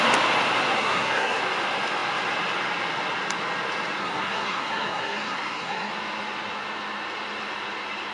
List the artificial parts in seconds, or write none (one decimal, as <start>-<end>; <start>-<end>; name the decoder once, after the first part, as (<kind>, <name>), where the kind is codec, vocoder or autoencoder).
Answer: 0.7-1.4 (codec, SNAC); 4.0-5.9